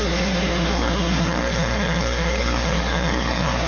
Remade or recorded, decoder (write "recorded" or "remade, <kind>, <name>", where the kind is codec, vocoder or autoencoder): remade, codec, SNAC